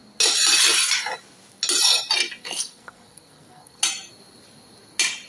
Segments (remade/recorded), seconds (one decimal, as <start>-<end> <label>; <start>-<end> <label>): 0.0-2.4 recorded; 2.4-3.8 remade; 3.8-5.3 recorded